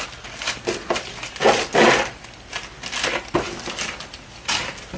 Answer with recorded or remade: recorded